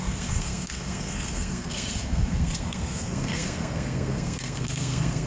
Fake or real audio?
fake